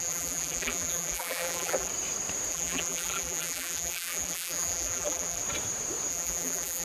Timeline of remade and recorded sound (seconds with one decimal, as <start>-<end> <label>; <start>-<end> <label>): 0.0-1.9 remade; 1.9-2.5 recorded; 2.5-5.4 remade; 5.4-6.1 recorded; 6.1-6.8 remade